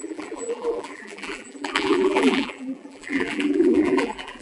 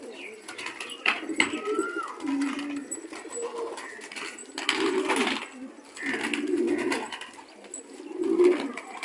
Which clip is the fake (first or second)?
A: first